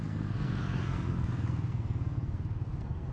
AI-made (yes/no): yes